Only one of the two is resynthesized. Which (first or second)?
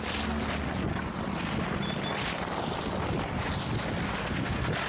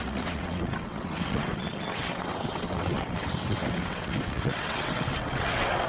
second